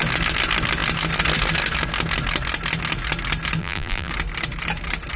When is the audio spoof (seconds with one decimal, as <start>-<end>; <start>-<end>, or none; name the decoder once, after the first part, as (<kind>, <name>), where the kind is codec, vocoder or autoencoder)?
3.6-4.1 (vocoder, BigVGAN v2)